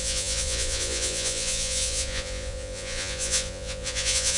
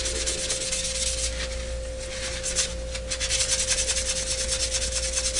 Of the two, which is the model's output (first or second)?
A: first